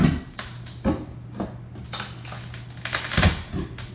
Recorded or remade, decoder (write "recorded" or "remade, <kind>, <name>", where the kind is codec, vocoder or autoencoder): recorded